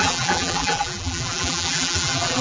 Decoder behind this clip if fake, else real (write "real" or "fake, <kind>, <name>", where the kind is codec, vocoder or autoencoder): fake, vocoder, BigVGAN v2